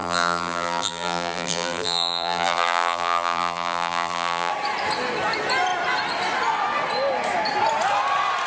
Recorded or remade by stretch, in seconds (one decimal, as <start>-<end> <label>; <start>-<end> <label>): 0.0-4.5 remade; 4.5-8.5 recorded